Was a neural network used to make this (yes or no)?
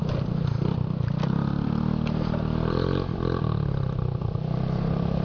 yes